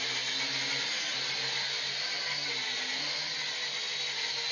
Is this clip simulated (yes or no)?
no